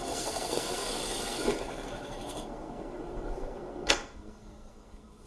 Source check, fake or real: fake